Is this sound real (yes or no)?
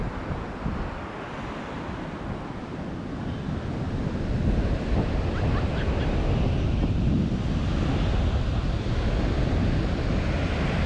yes